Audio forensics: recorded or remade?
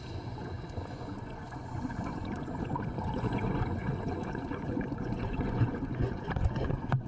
remade